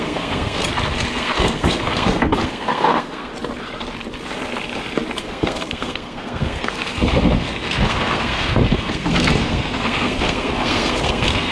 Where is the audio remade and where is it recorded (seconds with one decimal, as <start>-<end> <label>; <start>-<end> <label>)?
0.0-0.6 remade; 0.6-1.1 recorded; 1.1-3.3 remade; 3.3-5.2 recorded; 5.2-11.5 remade